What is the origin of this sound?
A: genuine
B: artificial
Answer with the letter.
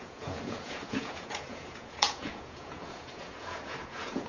B